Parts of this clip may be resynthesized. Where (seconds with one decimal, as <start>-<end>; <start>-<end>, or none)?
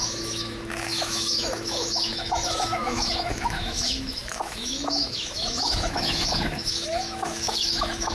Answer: 0.0-8.1